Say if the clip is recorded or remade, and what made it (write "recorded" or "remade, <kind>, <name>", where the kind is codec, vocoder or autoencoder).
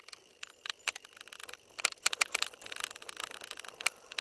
remade, vocoder, BigVGAN v2